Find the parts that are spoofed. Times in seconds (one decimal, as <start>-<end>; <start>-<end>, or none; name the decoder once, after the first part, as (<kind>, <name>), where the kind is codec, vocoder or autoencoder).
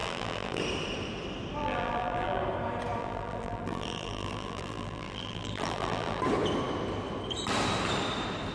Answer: 0.0-0.6 (vocoder, BigVGAN v2); 1.6-2.4; 3.0-6.2